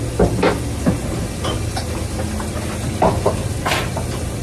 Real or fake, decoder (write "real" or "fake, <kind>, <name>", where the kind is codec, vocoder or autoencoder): real